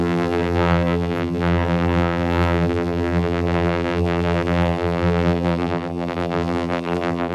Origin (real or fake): fake